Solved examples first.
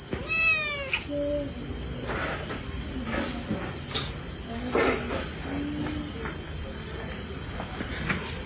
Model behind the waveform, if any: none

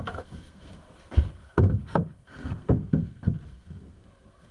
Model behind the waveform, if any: codec, SNAC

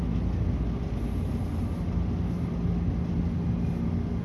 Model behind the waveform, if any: none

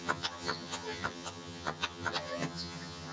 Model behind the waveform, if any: vocoder, HiFi-GAN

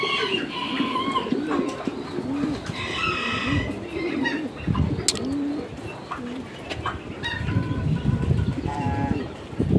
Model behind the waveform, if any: none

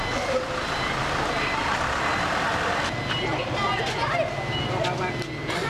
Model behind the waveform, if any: none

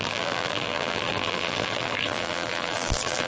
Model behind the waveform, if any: vocoder, BigVGAN v2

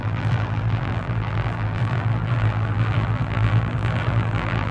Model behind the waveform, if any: vocoder, BigVGAN v2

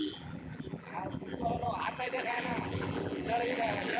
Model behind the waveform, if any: vocoder, BigVGAN v2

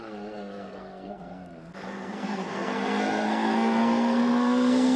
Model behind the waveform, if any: codec, SNAC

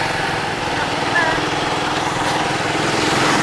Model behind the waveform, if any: vocoder, BigVGAN v2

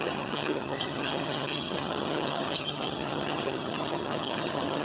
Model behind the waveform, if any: vocoder, HiFi-GAN